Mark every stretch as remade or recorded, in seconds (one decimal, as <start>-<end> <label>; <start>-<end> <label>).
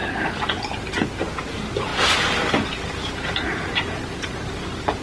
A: 0.0-0.7 remade; 0.7-1.9 recorded; 1.9-5.0 remade